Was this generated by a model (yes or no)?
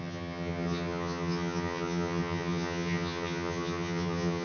yes